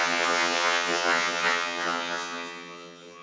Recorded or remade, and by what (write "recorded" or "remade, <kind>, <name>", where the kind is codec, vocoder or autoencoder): remade, vocoder, HiFi-GAN